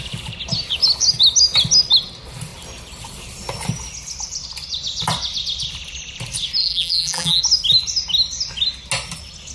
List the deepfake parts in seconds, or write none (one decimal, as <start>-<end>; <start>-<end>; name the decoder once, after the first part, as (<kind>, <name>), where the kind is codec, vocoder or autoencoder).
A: 6.6-7.4 (vocoder, BigVGAN v2)